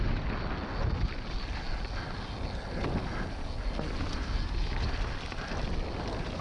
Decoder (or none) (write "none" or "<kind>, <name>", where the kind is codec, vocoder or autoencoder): none